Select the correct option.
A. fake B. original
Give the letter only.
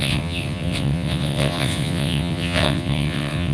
A